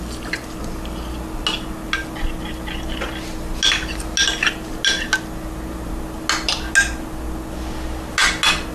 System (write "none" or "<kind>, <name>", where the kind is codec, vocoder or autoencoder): none